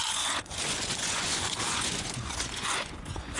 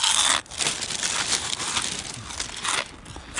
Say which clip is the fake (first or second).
first